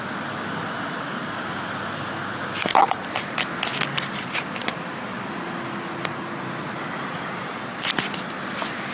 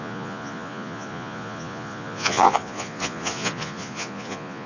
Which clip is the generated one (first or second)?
second